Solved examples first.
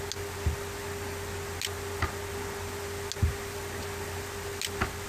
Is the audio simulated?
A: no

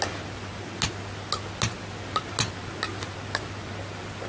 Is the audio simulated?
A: no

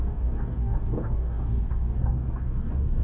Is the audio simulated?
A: yes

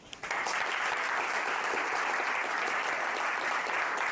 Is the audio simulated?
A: no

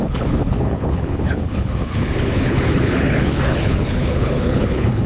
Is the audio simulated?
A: yes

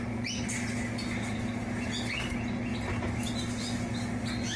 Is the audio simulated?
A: no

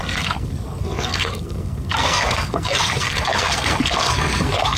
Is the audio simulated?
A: yes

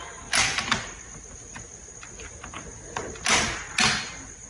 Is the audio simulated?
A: no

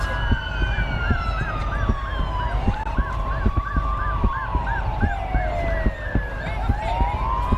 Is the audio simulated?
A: no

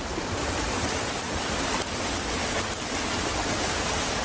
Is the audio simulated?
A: no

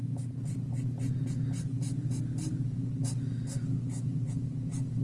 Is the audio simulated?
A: no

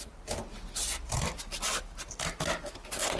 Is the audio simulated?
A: no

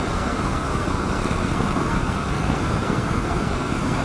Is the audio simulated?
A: yes